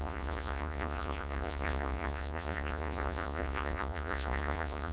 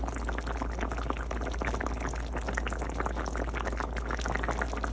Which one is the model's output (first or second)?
first